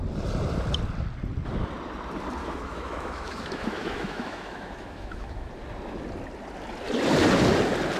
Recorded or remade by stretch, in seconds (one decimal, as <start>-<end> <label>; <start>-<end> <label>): 0.0-2.4 recorded; 2.4-5.5 remade; 5.5-8.0 recorded